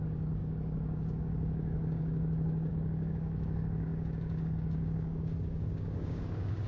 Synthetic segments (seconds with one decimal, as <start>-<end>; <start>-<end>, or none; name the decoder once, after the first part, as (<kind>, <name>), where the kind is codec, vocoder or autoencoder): 0.0-6.7 (codec, DAC)

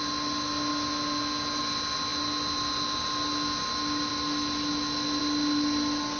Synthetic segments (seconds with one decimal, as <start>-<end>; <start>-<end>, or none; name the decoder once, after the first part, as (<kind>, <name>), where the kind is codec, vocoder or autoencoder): none